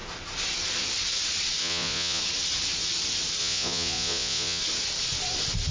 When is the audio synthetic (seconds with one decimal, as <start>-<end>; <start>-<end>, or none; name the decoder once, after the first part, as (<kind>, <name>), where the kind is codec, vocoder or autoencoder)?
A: 1.6-2.2 (vocoder, Vocos); 3.4-4.6